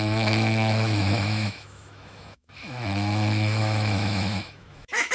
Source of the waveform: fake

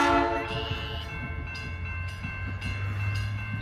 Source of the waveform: real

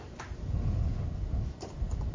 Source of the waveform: real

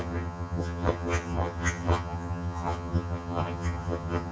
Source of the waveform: fake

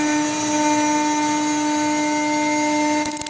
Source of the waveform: real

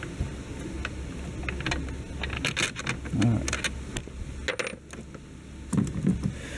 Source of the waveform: real